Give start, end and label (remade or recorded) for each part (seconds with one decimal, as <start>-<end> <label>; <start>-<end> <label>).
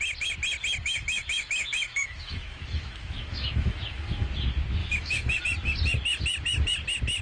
0.0-0.8 recorded; 0.8-4.3 remade; 4.3-4.8 recorded; 4.8-5.4 remade; 5.4-7.2 recorded